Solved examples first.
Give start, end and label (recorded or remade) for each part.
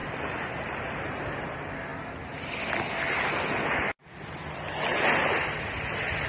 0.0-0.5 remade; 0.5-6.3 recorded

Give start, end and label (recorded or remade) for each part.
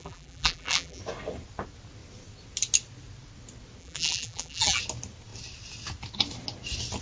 0.0-1.0 remade; 1.0-3.8 recorded; 3.8-4.8 remade; 4.8-7.0 recorded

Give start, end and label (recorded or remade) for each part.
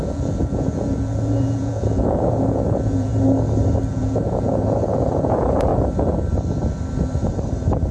0.0-3.1 remade; 3.1-3.9 recorded; 3.9-5.7 remade; 5.7-7.9 recorded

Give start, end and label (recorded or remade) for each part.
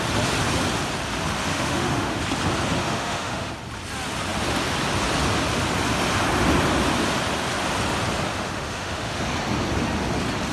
0.0-1.5 recorded; 1.5-2.2 remade; 2.2-2.8 recorded; 2.8-3.5 remade; 3.5-8.3 recorded; 8.3-9.2 remade; 9.2-10.5 recorded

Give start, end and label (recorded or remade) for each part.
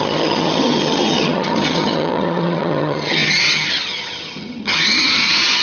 0.0-5.6 remade